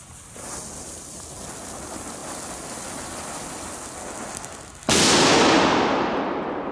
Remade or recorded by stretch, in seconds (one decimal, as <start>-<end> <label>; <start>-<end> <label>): 0.0-6.7 recorded